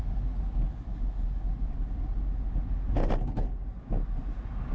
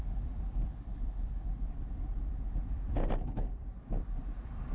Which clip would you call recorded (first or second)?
first